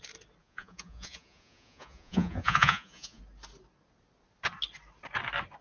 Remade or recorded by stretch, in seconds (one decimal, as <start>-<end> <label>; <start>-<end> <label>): 0.0-0.4 recorded; 0.4-3.2 remade; 3.2-5.6 recorded